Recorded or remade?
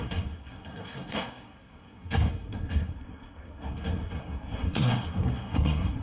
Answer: remade